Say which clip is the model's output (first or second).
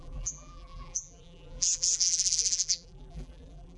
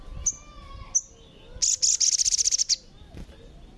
first